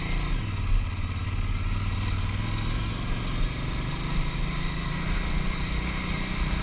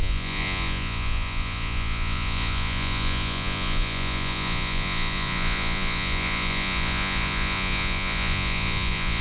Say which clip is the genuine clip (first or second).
first